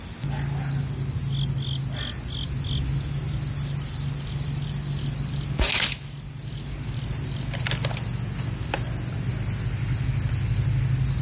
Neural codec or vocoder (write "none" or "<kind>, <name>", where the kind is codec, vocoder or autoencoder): none